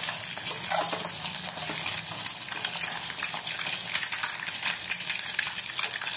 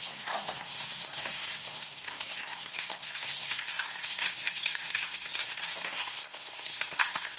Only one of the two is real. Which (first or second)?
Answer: first